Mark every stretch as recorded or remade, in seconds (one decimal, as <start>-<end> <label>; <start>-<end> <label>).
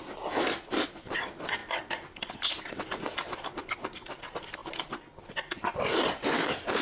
0.0-6.8 recorded